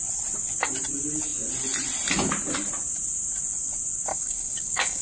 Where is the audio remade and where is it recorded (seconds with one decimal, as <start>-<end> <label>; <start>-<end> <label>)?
0.0-4.1 recorded; 4.1-5.0 remade